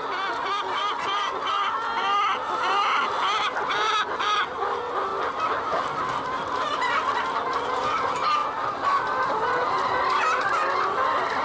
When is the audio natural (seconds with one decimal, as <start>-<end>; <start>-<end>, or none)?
0.0-11.4